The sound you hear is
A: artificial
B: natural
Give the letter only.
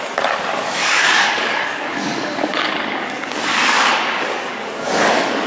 A